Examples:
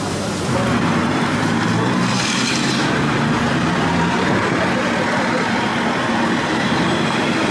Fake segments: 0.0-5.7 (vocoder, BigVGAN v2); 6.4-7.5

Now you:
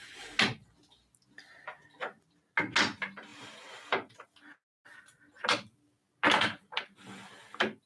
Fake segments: none

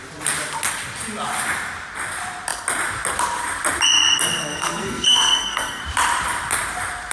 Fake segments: 4.4-5.8 (codec, SNAC)

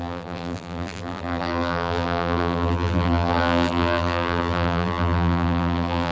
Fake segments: 0.0-6.1 (vocoder, BigVGAN v2)

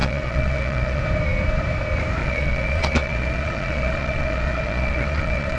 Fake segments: 0.0-1.0 (vocoder, Vocos); 2.2-5.6